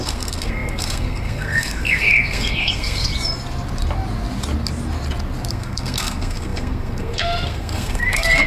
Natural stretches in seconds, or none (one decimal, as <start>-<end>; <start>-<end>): 3.1-5.5